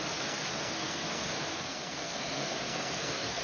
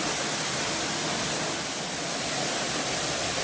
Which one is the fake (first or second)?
first